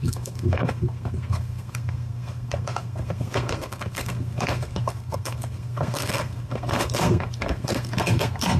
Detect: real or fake fake